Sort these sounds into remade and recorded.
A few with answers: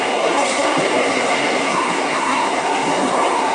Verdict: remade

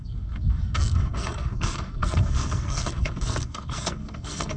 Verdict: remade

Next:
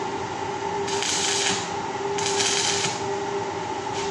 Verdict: recorded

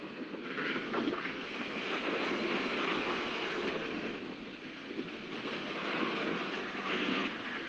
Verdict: remade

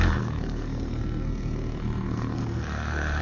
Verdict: remade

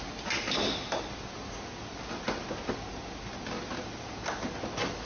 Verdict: recorded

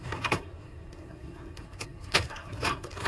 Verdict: remade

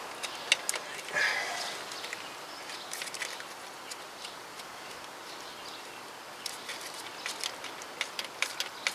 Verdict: recorded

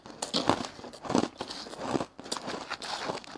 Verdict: recorded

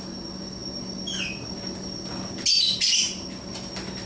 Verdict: recorded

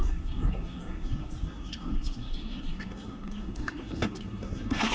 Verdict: remade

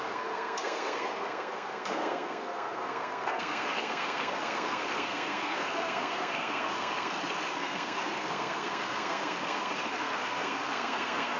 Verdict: remade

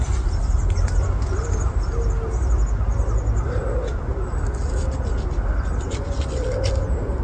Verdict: recorded